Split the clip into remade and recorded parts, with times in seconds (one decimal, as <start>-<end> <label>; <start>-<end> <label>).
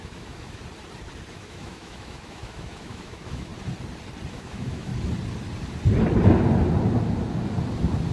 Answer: 0.0-0.6 remade; 0.6-1.3 recorded; 1.3-3.5 remade; 3.5-4.3 recorded; 4.3-4.9 remade; 4.9-8.1 recorded